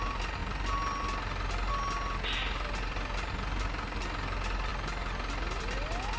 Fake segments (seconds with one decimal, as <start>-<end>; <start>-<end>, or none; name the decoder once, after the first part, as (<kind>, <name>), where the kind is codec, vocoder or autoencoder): none